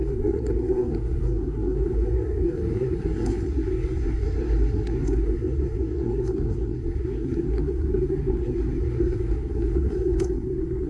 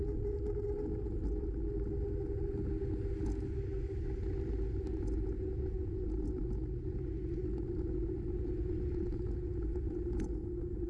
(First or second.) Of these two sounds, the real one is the second